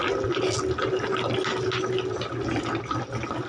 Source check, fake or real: real